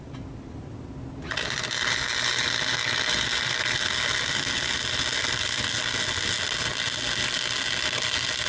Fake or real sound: real